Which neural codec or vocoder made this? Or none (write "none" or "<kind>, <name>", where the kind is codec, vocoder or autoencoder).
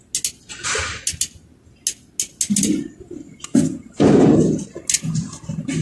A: none